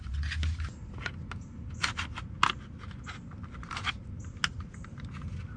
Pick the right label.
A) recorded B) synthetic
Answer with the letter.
A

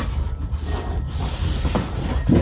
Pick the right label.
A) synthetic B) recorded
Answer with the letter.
B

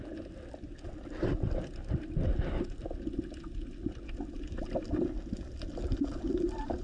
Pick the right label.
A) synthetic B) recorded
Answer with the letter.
B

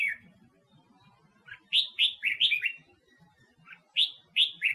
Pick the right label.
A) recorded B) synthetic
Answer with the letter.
A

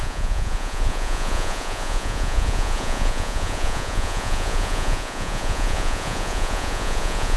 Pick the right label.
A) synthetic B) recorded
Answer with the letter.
A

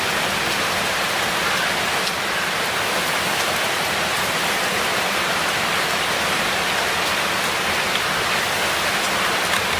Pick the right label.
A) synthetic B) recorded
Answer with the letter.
B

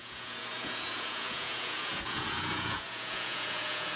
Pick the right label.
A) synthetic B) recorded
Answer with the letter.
A